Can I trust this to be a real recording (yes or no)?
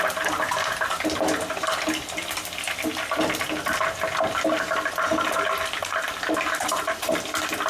yes